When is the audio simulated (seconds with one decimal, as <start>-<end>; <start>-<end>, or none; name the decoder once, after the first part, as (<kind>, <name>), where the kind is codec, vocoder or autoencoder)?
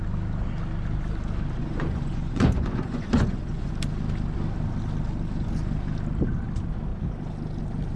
1.6-3.7 (vocoder, Vocos)